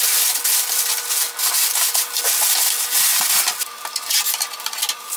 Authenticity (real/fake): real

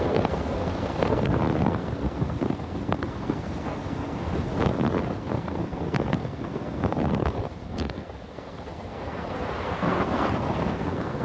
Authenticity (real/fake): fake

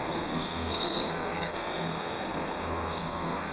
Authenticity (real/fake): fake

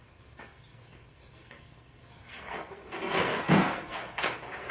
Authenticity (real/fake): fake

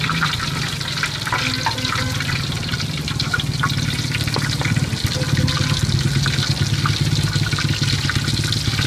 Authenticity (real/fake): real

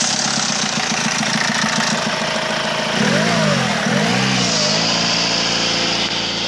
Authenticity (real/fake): real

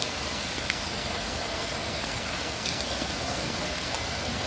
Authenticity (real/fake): fake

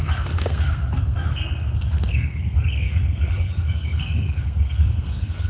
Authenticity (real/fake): fake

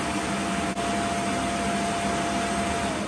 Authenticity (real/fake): real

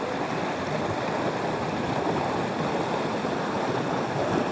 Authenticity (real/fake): real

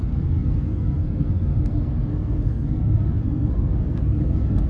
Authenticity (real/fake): fake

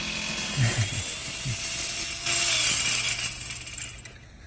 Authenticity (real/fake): real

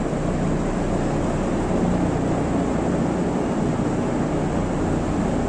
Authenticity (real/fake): real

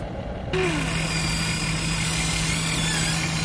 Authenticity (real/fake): real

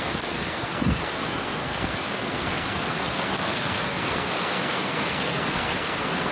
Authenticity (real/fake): fake